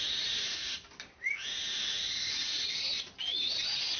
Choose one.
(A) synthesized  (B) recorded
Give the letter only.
B